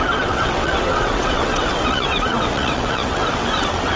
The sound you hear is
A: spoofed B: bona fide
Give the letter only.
A